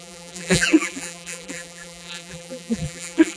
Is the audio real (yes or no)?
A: no